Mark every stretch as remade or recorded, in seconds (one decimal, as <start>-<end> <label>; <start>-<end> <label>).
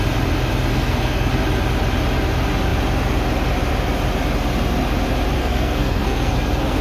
0.0-0.7 recorded; 0.7-1.3 remade; 1.3-5.4 recorded; 5.4-6.8 remade